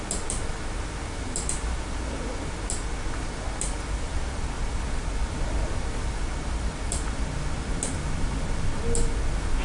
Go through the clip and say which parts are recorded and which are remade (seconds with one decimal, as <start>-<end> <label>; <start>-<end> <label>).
0.0-9.6 recorded